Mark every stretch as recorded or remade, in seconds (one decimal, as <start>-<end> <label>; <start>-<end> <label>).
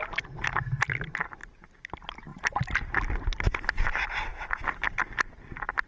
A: 0.0-5.9 recorded